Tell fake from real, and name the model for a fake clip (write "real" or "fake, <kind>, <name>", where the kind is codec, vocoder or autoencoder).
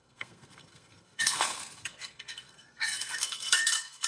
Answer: fake, codec, SNAC